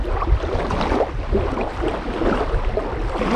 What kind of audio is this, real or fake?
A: real